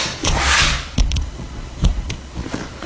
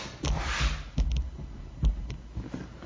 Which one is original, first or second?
second